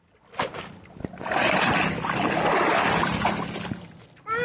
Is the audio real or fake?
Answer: real